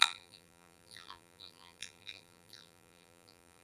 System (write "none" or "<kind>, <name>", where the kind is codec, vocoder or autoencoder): vocoder, BigVGAN v2